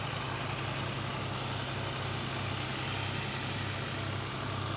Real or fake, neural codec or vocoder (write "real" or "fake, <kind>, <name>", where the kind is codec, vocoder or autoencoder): real